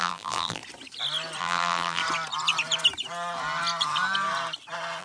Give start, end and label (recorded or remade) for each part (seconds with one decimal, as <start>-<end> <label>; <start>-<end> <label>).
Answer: 0.0-0.6 remade; 0.6-1.4 recorded; 1.4-2.0 remade; 2.0-5.0 recorded